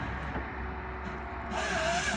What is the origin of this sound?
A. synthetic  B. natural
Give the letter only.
B